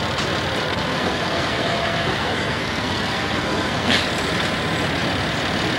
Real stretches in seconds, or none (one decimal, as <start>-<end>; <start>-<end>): 0.0-0.7; 4.0-5.8